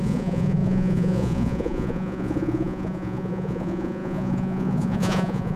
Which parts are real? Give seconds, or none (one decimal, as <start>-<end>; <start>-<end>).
none